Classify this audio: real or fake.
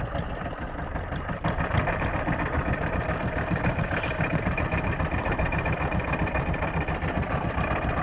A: fake